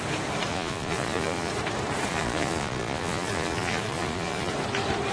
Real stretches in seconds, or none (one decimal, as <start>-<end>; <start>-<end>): 0.0-0.5; 1.5-2.1; 4.5-5.1